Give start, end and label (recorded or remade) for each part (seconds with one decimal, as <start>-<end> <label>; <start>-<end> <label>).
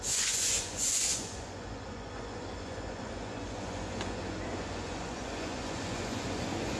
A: 0.0-6.8 remade